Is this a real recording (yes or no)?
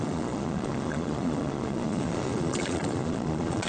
no